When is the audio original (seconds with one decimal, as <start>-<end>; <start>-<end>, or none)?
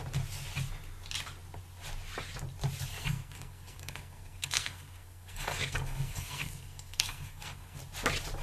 0.0-2.9; 7.8-8.4